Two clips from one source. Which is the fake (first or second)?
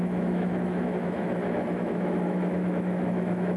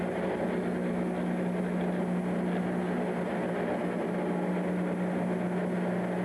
first